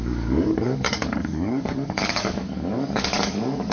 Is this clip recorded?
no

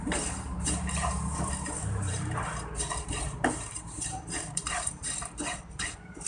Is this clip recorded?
no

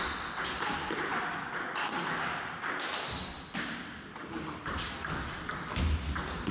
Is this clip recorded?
yes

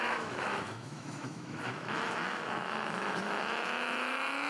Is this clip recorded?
no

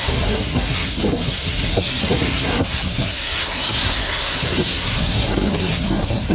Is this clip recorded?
no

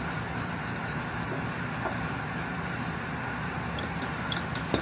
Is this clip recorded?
yes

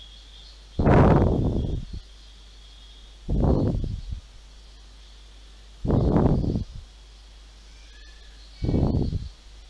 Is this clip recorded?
yes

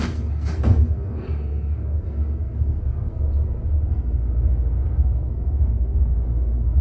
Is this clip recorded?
no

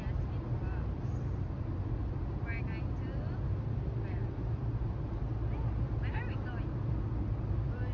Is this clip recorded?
yes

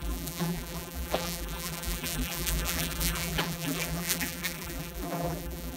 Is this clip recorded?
no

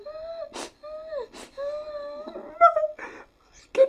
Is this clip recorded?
yes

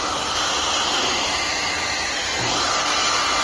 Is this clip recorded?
yes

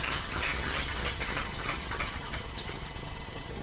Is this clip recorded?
no